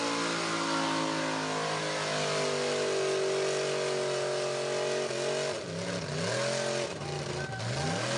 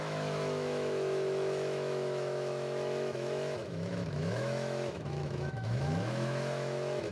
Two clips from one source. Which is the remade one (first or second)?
second